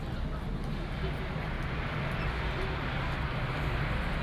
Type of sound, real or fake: real